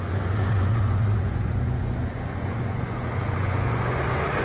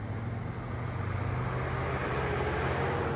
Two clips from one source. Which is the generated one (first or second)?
first